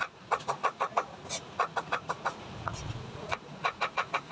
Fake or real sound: fake